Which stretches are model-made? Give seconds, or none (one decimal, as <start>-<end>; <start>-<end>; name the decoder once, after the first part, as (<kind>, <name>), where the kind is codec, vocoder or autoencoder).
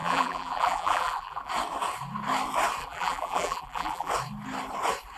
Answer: 0.0-1.5 (vocoder, BigVGAN v2); 2.8-4.1